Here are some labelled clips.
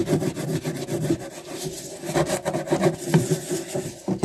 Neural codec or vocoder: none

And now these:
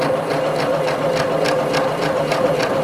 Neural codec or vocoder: vocoder, BigVGAN v2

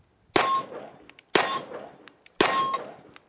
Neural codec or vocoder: none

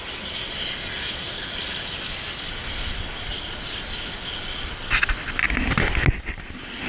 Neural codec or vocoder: none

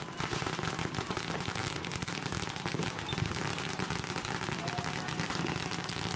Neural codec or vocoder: none